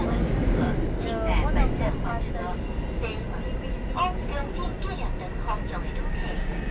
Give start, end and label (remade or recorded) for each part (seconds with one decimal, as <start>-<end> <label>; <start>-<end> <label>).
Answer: 0.0-6.7 recorded